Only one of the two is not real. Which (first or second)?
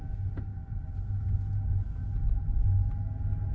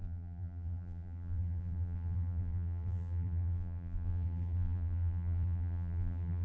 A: second